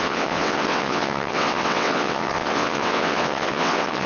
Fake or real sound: fake